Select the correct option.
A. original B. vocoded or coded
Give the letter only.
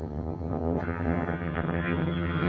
B